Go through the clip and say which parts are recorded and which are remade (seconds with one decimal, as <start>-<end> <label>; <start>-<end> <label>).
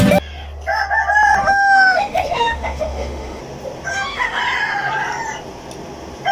0.0-1.4 recorded; 1.4-3.4 remade; 3.4-3.9 recorded; 3.9-4.4 remade; 4.4-6.3 recorded